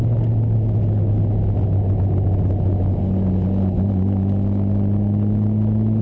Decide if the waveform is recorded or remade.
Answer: recorded